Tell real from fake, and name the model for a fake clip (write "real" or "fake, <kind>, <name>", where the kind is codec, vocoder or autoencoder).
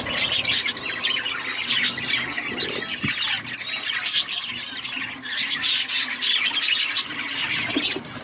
real